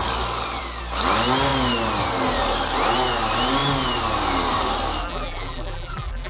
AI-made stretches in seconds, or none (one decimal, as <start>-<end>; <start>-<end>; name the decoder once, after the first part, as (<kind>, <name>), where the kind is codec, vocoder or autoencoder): 5.0-6.3 (vocoder, BigVGAN v2)